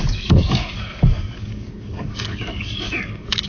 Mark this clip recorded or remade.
remade